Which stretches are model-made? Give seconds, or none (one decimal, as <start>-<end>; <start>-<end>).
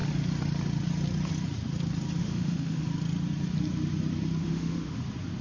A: 2.2-2.8; 4.4-5.0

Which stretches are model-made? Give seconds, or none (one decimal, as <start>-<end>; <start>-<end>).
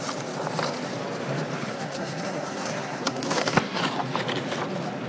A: 1.6-3.8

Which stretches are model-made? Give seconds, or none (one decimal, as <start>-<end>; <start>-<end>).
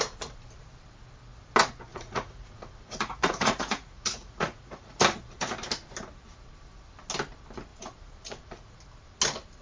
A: 1.9-5.0; 7.7-8.8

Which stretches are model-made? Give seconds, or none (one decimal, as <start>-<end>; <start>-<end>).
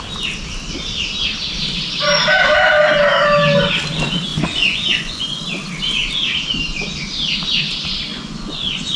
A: 4.3-5.4; 8.1-9.0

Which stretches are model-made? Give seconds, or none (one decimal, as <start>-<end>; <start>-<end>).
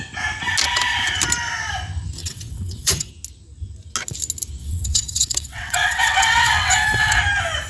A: 2.2-3.1; 4.6-7.2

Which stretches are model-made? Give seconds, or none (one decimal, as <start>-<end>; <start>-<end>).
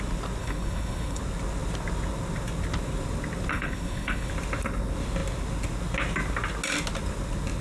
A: 0.4-1.2; 3.5-4.3